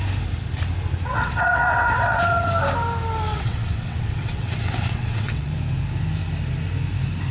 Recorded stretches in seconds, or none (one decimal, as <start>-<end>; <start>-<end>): 0.0-1.1; 2.5-3.3; 5.5-7.3